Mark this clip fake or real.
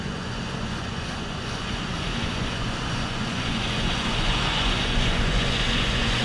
fake